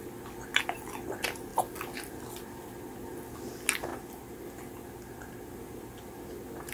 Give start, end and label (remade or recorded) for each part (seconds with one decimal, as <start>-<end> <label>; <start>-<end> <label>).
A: 0.0-6.7 recorded